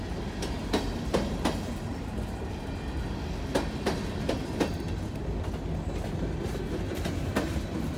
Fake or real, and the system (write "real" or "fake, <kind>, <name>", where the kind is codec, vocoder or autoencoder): real